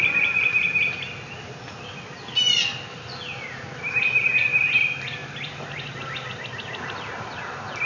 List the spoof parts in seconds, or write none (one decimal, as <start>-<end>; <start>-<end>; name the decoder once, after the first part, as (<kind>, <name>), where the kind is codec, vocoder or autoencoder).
none